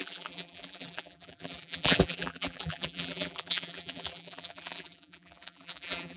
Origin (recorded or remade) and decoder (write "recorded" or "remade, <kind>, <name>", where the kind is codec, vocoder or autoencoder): remade, vocoder, BigVGAN v2